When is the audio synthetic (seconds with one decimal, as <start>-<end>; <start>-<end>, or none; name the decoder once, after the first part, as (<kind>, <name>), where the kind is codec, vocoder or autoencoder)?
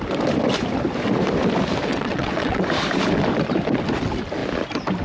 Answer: 1.9-2.6 (vocoder, WaveNeXt)